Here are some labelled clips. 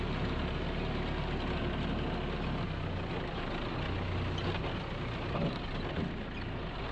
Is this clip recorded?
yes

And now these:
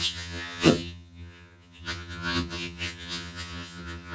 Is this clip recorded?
no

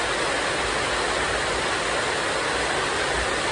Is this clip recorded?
yes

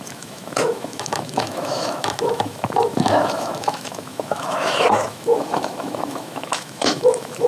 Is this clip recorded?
no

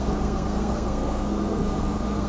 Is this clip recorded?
no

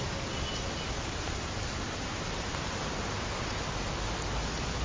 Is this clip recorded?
yes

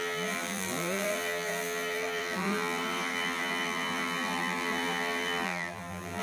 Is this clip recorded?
no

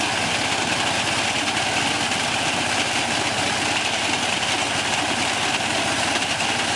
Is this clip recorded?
yes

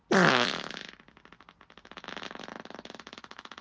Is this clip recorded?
yes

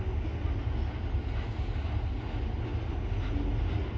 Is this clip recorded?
yes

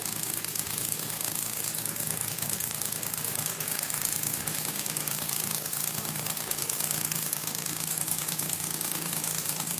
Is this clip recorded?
no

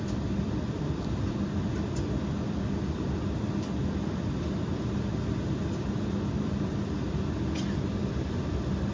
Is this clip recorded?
no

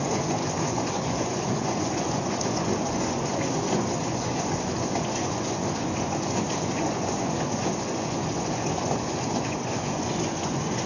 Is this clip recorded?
no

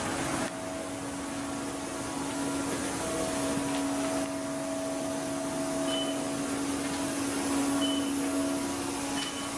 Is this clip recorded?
yes